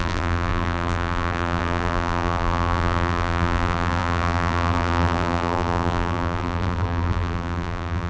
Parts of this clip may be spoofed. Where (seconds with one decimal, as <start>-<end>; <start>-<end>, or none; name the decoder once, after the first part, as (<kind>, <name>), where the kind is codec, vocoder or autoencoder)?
0.0-8.1 (vocoder, BigVGAN v2)